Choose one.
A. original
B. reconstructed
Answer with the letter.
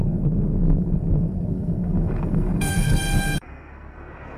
B